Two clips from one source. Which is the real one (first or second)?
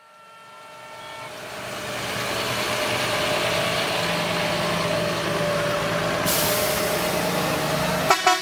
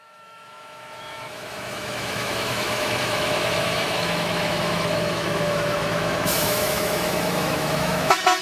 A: first